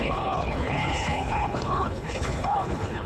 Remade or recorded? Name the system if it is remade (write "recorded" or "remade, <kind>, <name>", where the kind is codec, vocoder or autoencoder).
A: remade, codec, HILCodec